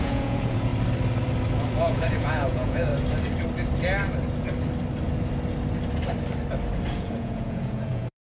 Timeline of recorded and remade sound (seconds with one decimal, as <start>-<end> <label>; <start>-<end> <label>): 0.0-0.7 remade; 0.7-1.8 recorded; 1.8-2.9 remade; 2.9-6.9 recorded; 6.9-8.3 remade